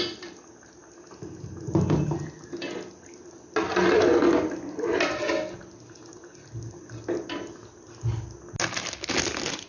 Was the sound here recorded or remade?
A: recorded